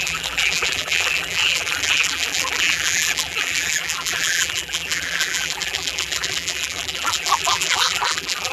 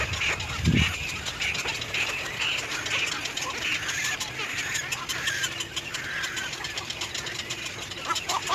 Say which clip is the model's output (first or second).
first